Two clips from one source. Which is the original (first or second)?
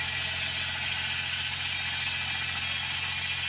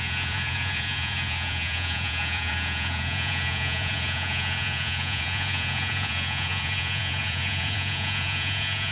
first